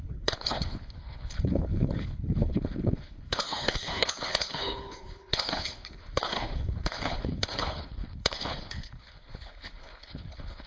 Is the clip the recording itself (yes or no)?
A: no